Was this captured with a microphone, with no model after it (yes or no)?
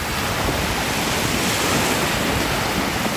yes